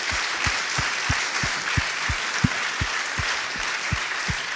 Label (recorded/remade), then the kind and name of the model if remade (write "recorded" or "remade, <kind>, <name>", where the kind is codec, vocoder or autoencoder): remade, vocoder, BigVGAN v2